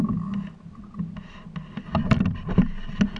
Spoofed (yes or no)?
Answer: no